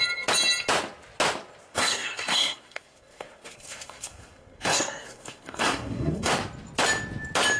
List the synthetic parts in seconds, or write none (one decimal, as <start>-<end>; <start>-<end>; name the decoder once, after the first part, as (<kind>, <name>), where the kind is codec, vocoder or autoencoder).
1.7-6.3 (codec, SNAC)